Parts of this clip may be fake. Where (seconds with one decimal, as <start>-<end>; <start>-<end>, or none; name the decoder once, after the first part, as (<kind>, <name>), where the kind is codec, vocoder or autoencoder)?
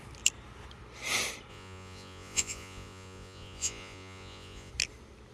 1.5-4.7 (vocoder, Vocos)